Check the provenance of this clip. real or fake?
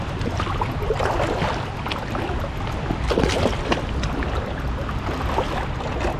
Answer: real